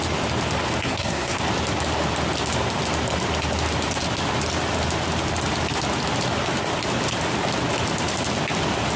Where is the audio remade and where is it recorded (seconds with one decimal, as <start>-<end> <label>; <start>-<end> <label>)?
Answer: 0.0-0.8 recorded; 0.8-1.4 remade; 1.4-9.0 recorded